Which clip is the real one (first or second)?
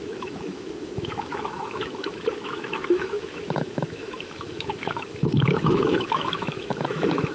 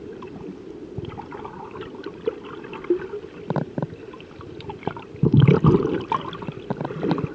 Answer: second